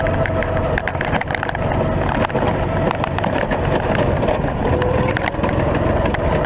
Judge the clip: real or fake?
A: real